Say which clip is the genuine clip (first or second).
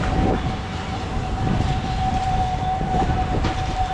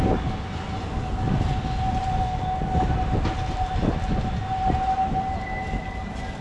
second